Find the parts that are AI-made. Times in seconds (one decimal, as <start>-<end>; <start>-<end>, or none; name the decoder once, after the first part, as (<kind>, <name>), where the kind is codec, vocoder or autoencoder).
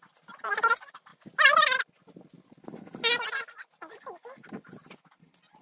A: 0.0-1.1 (vocoder, BigVGAN v2); 4.5-5.6